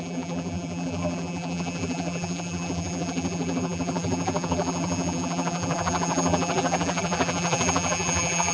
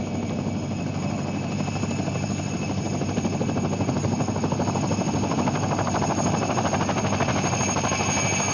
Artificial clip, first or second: first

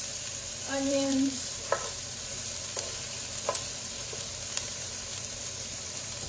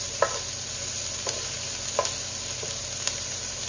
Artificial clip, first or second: first